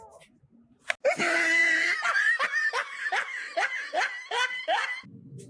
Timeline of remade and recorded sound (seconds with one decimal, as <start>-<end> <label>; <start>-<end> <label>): 0.0-5.5 recorded